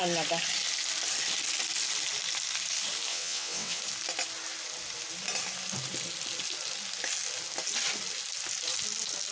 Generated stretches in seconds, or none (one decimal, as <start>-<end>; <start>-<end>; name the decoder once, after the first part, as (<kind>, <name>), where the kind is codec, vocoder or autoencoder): 3.1-3.8 (vocoder, WaveNeXt)